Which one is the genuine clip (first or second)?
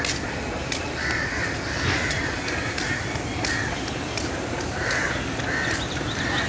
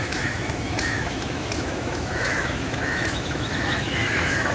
first